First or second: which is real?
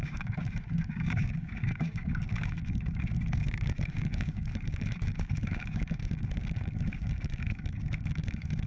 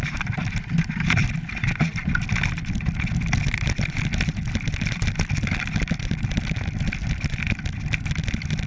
second